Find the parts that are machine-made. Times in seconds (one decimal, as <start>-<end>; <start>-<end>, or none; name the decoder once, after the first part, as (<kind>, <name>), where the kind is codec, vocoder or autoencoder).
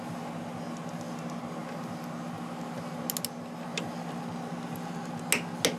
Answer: none